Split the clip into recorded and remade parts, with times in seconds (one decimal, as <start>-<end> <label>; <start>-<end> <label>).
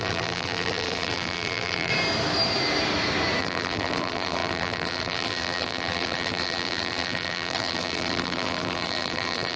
0.0-1.9 remade; 1.9-3.4 recorded; 3.4-9.6 remade